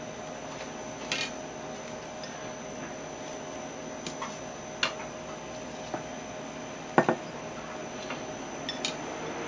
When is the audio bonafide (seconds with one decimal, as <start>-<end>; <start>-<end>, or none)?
0.0-9.5